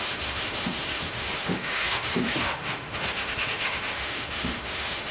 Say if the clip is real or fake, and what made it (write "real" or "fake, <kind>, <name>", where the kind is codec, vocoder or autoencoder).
fake, autoencoder, DAC-VAE